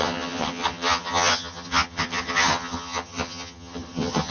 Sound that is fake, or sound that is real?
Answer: fake